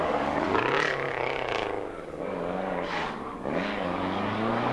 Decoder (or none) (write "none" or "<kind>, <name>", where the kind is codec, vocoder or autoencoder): codec, DAC